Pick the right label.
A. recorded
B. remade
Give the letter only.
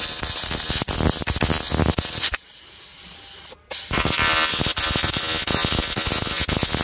A